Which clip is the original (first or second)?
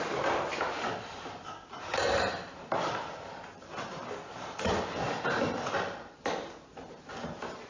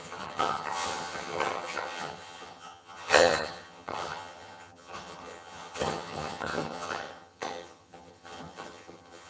first